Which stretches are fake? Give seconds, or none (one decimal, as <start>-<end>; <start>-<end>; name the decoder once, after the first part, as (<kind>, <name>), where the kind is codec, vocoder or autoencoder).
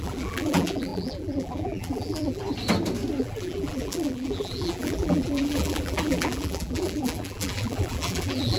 0.0-2.4 (vocoder, BigVGAN v2); 3.2-8.6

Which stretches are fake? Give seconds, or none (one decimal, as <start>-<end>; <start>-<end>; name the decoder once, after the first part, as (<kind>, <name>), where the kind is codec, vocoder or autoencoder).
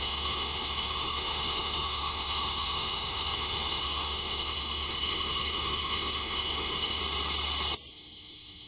0.0-7.0 (autoencoder, DAC-VAE); 7.9-8.7